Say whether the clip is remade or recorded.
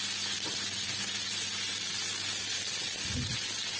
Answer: recorded